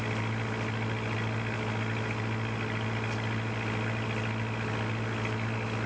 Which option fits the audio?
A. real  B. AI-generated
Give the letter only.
A